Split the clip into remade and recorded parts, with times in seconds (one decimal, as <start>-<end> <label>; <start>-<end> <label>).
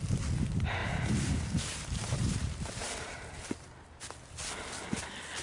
0.0-0.8 recorded; 0.8-3.5 remade; 3.5-5.4 recorded